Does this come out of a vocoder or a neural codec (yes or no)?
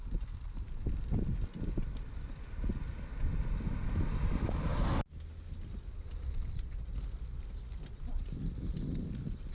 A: no